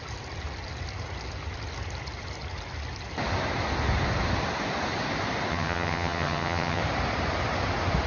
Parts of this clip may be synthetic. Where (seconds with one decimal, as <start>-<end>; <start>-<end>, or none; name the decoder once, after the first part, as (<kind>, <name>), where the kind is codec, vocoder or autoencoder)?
5.5-6.8 (vocoder, HiFi-GAN)